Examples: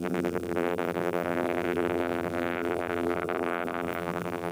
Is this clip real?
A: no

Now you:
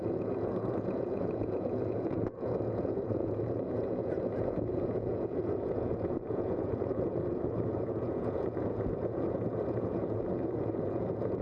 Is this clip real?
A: no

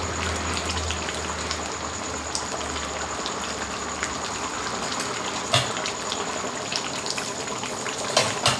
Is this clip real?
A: yes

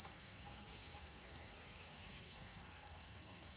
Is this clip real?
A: no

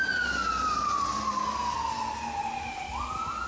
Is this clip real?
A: yes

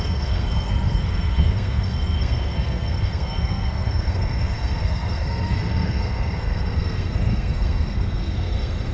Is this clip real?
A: no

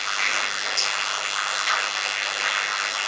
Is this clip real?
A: yes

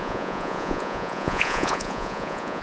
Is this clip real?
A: no